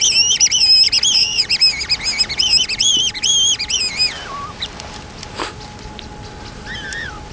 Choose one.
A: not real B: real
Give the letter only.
B